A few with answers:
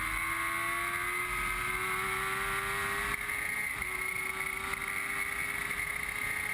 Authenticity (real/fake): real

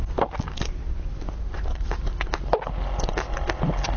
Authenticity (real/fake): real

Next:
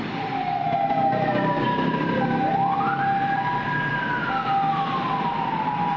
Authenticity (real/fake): real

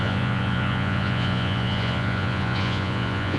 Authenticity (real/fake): fake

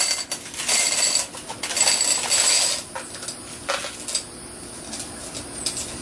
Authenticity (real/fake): real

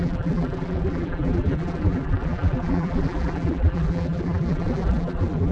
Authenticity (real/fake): fake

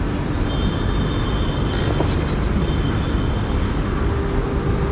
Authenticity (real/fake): real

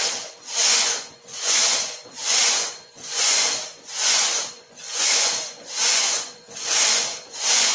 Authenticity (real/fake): fake